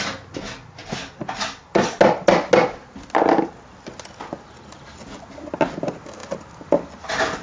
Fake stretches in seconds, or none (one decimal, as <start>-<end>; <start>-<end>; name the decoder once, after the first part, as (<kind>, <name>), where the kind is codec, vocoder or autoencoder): none